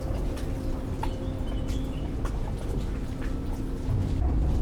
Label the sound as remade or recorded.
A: recorded